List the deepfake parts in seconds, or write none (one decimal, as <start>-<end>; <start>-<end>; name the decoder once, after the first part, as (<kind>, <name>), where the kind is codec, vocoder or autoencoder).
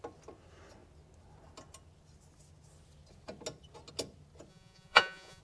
4.5-5.4 (vocoder, Vocos)